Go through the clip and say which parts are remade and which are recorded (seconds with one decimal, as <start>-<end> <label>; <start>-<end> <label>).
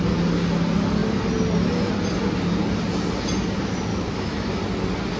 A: 0.0-3.9 recorded; 3.9-4.6 remade; 4.6-5.2 recorded